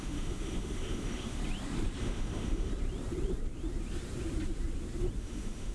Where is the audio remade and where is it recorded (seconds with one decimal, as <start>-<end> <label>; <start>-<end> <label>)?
0.0-1.4 remade; 1.4-2.0 recorded; 2.0-2.7 remade; 2.7-5.2 recorded; 5.2-5.7 remade